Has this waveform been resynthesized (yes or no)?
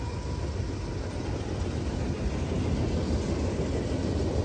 no